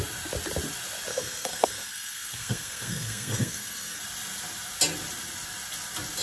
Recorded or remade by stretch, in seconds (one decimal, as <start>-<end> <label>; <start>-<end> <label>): 0.0-1.1 recorded; 1.1-4.0 remade; 4.0-6.2 recorded